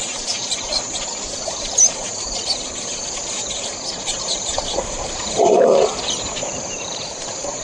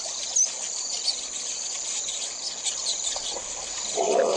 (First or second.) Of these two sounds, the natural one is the second